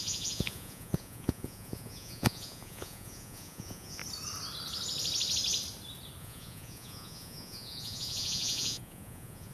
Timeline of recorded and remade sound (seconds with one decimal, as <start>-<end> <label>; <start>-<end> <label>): 0.0-4.0 remade; 4.0-6.2 recorded; 6.2-9.5 remade